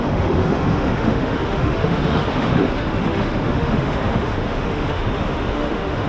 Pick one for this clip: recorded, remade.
remade